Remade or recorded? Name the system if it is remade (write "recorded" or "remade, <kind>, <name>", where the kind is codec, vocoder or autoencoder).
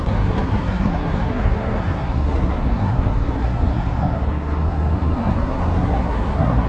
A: remade, codec, SNAC